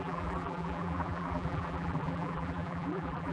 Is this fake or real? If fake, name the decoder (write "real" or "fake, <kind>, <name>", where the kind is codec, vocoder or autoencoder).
fake, vocoder, BigVGAN v2